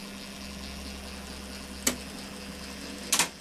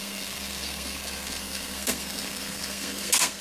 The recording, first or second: first